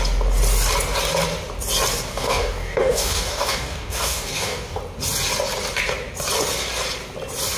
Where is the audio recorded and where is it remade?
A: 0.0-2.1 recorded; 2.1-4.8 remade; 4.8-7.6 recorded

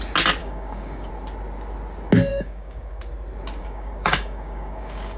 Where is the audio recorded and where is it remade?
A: 0.0-0.4 recorded; 0.4-1.1 remade; 1.1-2.3 recorded; 2.3-3.0 remade; 3.0-3.6 recorded; 3.6-5.2 remade

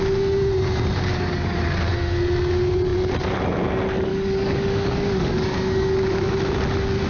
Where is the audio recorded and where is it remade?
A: 0.0-1.1 recorded; 1.1-1.6 remade; 1.6-4.1 recorded; 4.1-6.3 remade; 6.3-7.1 recorded